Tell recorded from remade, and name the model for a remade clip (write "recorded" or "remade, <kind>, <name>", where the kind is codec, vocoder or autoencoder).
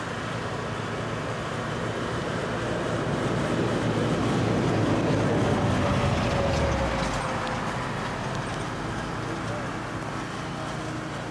recorded